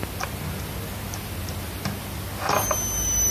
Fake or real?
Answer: real